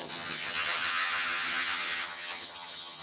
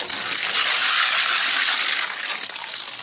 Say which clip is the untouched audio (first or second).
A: second